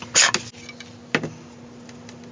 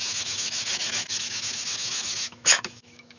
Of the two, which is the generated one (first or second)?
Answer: second